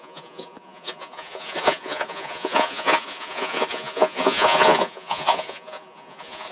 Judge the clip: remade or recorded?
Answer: remade